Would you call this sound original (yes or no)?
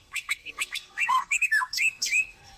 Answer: no